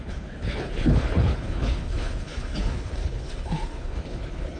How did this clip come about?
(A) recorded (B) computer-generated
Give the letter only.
B